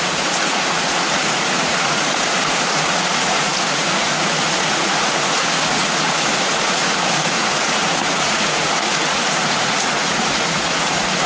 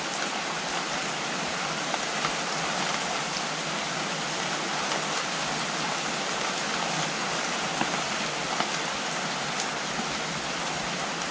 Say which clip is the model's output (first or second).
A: first